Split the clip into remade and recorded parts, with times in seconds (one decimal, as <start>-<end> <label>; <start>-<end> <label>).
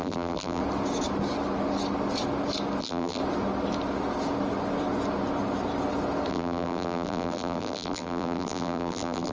0.0-0.6 remade; 0.6-2.8 recorded; 2.8-3.2 remade; 3.2-6.3 recorded; 6.3-9.3 remade